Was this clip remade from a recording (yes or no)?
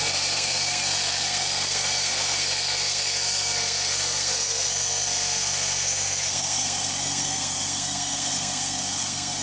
yes